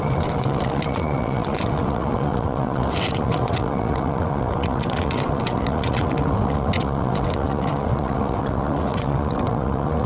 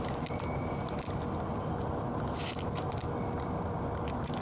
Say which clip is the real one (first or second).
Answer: second